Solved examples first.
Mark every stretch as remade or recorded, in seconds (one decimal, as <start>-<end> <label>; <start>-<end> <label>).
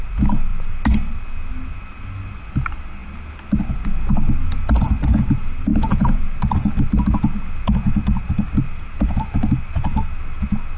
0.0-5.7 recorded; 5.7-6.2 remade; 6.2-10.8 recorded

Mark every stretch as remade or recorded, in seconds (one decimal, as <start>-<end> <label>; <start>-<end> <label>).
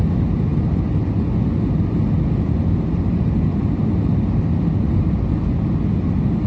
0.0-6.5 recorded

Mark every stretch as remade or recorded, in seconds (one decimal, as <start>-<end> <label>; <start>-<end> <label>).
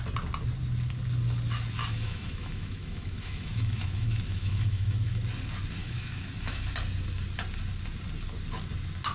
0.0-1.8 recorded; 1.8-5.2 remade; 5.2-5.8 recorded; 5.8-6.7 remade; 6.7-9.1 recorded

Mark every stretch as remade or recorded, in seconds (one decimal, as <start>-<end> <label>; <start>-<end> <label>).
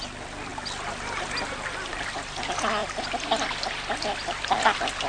0.0-5.1 recorded